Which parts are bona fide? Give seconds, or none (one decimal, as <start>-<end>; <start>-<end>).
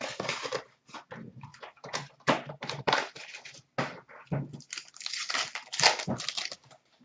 0.0-1.5; 3.2-7.0